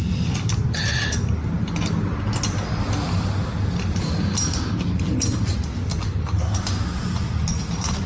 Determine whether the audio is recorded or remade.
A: recorded